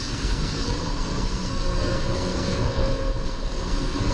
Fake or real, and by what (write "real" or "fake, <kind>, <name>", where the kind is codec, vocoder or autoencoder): fake, codec, SNAC